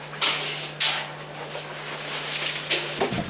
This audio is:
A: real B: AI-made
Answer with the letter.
A